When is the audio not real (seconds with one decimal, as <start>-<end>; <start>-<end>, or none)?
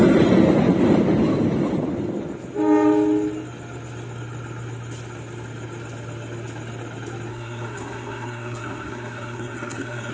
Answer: 7.3-10.1